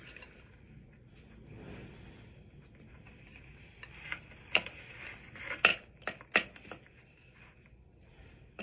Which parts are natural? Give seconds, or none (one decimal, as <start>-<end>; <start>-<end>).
0.0-8.6